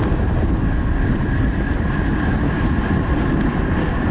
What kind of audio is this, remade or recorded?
recorded